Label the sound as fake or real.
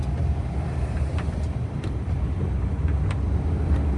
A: fake